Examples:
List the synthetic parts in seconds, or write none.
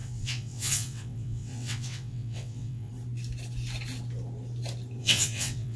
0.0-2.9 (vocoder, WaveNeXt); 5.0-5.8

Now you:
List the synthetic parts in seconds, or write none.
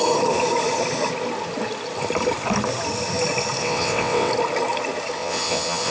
3.6-4.3 (vocoder, WaveNeXt); 5.2-5.9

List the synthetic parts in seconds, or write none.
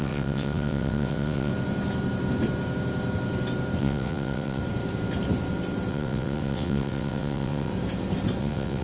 0.0-1.5 (vocoder, WaveNeXt); 3.8-4.6; 5.9-7.7; 8.4-8.8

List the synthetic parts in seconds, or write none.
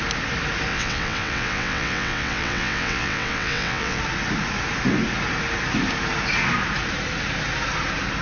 0.7-4.0 (vocoder, WaveNeXt)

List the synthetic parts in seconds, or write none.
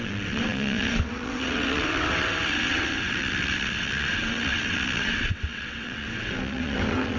0.0-7.2 (vocoder, WaveNeXt)